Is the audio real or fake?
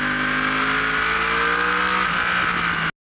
real